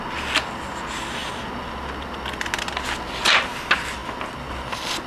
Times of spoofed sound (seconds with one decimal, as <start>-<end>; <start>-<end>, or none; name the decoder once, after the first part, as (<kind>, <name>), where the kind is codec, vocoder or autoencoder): none